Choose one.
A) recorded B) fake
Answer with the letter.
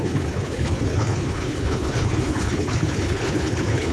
B